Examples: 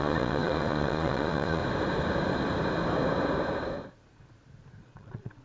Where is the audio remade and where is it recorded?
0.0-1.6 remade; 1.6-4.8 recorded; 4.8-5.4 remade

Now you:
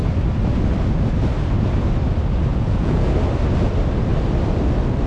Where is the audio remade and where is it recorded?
0.0-2.5 recorded; 2.5-3.1 remade; 3.1-5.1 recorded

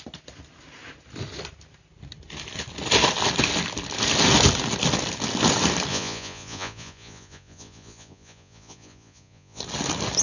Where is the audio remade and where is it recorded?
0.0-5.9 recorded; 5.9-9.6 remade; 9.6-10.2 recorded

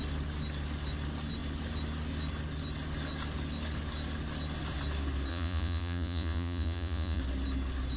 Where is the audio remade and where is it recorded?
0.0-5.3 recorded; 5.3-7.2 remade; 7.2-8.0 recorded

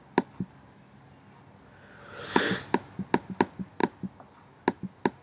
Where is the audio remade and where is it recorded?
0.0-5.2 recorded

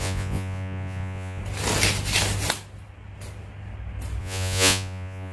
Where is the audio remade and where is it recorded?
0.0-1.4 remade; 1.4-4.2 recorded; 4.2-5.3 remade